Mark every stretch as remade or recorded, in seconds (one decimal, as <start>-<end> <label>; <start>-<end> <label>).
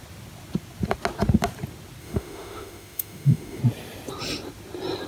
0.0-2.0 recorded; 2.0-3.6 remade; 3.6-5.1 recorded